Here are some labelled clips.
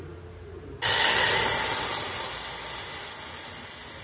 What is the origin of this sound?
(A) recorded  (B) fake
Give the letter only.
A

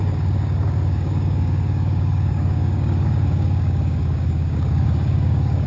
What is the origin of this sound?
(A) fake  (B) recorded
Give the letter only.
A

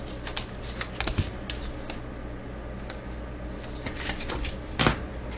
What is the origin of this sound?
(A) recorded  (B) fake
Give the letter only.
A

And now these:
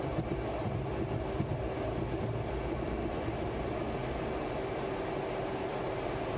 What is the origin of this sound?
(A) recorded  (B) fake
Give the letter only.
A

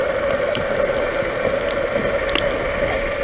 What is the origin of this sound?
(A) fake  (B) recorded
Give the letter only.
B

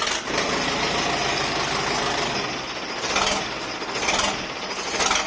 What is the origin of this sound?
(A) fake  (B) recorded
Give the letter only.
B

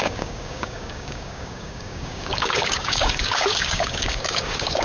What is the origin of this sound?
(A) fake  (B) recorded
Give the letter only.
A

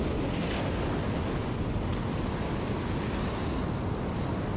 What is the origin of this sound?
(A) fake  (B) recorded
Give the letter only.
B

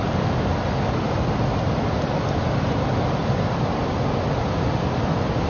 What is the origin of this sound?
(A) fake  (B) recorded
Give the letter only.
B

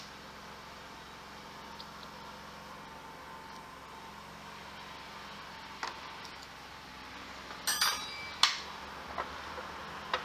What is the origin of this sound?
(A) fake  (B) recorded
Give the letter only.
B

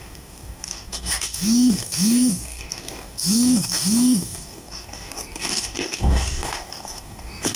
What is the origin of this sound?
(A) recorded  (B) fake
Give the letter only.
B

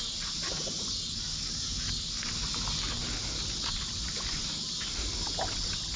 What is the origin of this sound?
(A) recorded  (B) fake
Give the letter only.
A